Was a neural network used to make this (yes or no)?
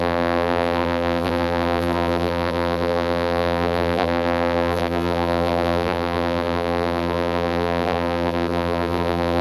yes